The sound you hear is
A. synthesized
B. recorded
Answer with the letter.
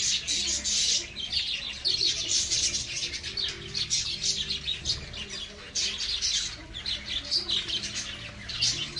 B